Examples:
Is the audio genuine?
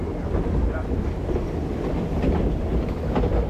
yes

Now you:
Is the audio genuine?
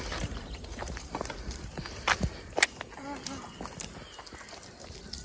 yes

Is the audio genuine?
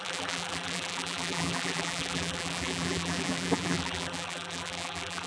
no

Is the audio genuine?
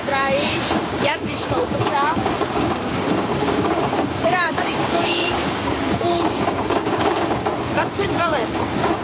no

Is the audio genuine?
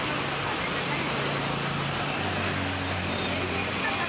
yes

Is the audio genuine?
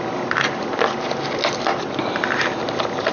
yes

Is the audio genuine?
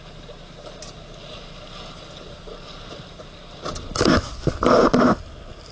yes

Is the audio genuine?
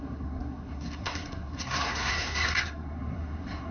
no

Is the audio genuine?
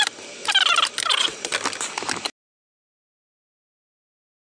yes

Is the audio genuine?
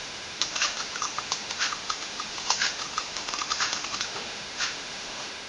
no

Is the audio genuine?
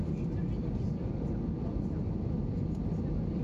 yes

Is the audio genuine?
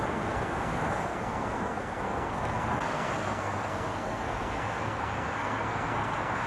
no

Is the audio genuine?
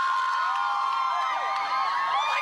yes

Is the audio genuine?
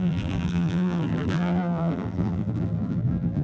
no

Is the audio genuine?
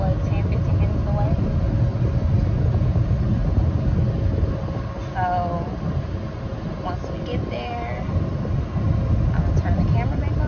yes